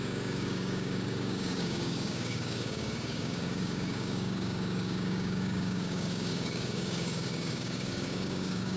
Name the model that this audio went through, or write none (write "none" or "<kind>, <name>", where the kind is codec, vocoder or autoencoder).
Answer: codec, DAC